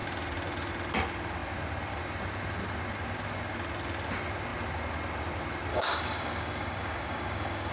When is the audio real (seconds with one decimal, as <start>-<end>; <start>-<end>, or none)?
0.0-5.7